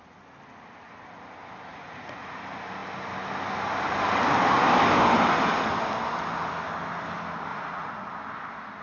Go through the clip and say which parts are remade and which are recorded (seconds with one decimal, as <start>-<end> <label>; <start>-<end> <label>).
0.0-1.7 recorded; 1.7-2.3 remade; 2.3-7.5 recorded; 7.5-8.1 remade; 8.1-8.8 recorded